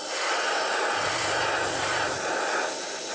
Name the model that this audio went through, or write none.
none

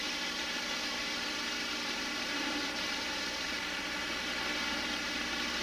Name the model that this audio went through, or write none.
none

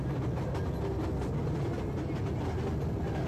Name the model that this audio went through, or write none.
none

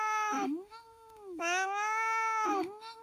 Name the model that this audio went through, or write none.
autoencoder, DAC-VAE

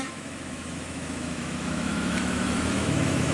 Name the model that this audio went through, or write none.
autoencoder, DAC-VAE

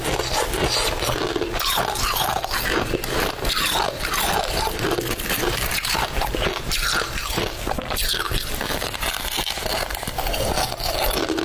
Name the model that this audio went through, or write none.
none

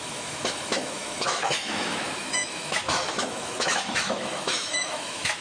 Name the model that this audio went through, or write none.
autoencoder, DAC-VAE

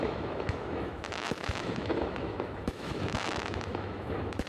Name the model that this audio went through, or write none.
autoencoder, DAC-VAE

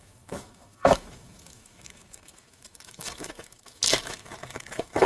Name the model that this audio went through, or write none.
autoencoder, DAC-VAE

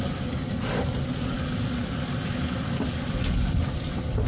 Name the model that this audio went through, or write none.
none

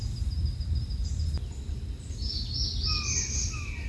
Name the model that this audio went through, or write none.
none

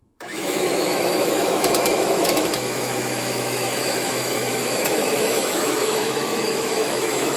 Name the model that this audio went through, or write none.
autoencoder, DAC-VAE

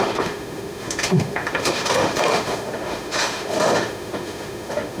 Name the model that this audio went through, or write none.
autoencoder, DAC-VAE